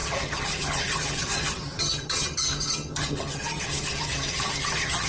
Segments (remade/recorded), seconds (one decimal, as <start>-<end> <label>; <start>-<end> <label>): 0.0-5.1 remade